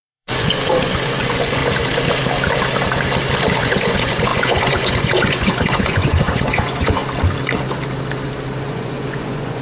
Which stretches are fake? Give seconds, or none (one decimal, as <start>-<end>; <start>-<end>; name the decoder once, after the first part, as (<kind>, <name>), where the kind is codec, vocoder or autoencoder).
0.0-1.6 (vocoder, Vocos); 3.6-7.0; 8.6-9.6